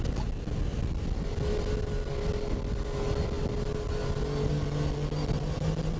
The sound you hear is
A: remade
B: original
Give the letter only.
B